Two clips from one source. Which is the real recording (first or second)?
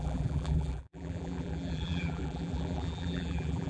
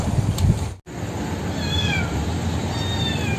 second